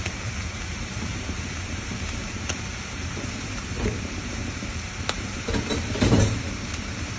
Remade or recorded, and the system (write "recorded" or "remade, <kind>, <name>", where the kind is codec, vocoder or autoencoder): remade, vocoder, BigVGAN v2